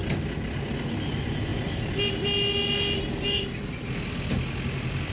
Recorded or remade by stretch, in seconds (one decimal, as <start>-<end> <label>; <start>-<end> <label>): 0.0-5.1 recorded